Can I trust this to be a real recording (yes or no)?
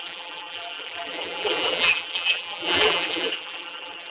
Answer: no